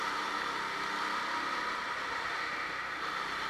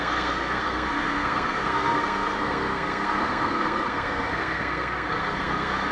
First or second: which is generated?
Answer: second